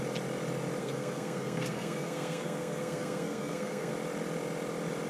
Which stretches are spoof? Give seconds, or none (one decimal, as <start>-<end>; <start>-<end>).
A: 0.8-3.9